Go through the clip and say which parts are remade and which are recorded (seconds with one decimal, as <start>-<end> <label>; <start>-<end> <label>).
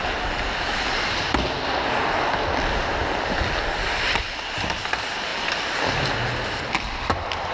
0.0-7.5 recorded